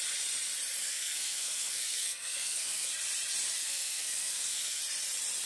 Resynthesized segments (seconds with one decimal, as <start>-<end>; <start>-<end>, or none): 0.8-2.9; 3.6-4.8